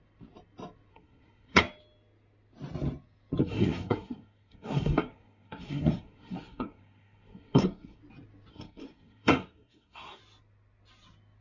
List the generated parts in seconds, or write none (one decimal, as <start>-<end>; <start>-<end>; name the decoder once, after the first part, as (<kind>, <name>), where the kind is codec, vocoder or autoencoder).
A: 0.9-1.6 (codec, SNAC); 3.4-8.0; 8.5-10.2